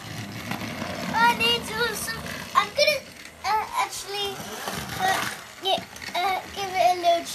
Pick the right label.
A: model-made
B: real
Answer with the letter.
B